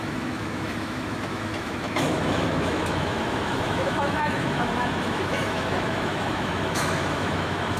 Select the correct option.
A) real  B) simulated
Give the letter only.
B